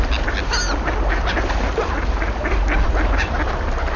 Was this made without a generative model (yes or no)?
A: yes